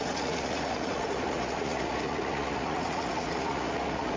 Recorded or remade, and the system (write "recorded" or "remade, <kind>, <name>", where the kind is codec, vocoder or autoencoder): remade, vocoder, Vocos